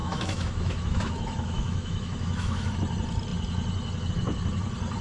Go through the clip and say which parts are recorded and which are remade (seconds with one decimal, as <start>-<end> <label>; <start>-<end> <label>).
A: 0.0-2.7 remade; 2.7-5.0 recorded